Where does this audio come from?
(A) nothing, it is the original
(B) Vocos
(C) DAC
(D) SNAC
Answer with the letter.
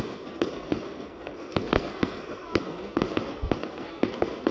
D